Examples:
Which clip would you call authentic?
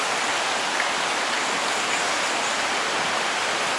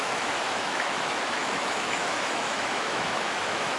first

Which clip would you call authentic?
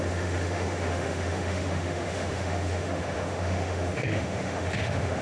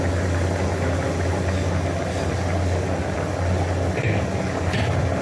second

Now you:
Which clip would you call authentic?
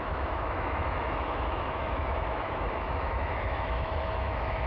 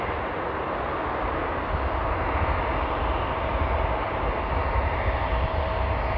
second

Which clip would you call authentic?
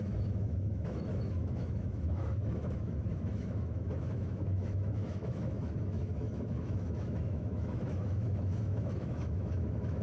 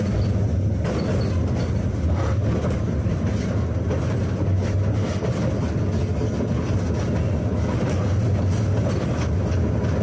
second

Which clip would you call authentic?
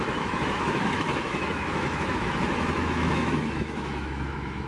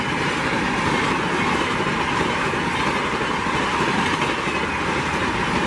second